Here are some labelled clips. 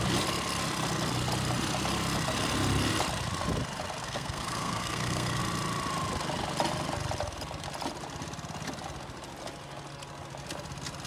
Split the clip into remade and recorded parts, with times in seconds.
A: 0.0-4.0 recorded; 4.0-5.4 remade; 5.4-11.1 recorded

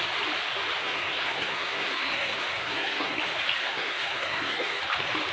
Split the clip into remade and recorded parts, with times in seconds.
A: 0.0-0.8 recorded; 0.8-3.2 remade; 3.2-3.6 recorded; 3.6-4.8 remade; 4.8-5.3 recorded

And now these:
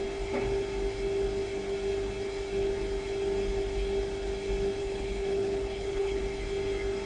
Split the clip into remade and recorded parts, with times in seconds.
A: 0.0-4.8 recorded; 4.8-6.2 remade; 6.2-7.1 recorded

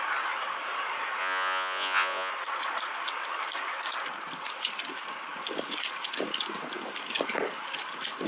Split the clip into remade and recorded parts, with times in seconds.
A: 0.0-1.2 recorded; 1.2-2.3 remade; 2.3-8.3 recorded